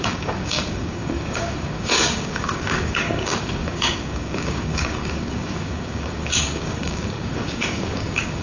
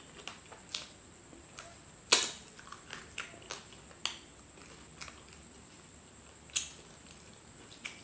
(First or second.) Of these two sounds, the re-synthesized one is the first